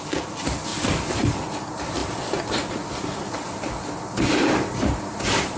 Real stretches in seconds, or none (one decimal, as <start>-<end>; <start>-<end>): 0.0-5.6

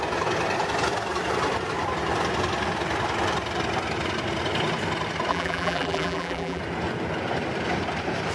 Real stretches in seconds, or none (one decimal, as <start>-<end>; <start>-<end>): 0.0-5.3; 6.6-8.3

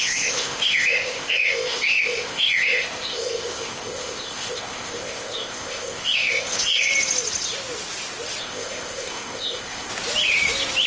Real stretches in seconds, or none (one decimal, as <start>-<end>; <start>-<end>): 6.9-8.4; 9.9-10.9

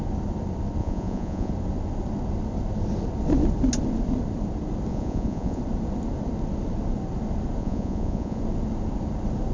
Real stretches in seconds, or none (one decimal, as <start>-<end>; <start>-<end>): 0.0-0.8; 1.5-4.9; 5.6-7.6; 8.4-9.5